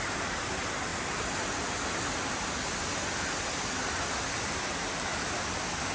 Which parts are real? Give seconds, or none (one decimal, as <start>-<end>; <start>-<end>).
0.0-5.9